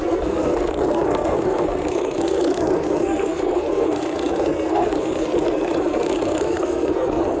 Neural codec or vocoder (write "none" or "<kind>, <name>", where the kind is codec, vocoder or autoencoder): codec, SNAC